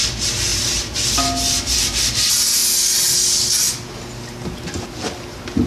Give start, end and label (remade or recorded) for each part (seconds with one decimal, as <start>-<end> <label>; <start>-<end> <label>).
0.0-5.7 recorded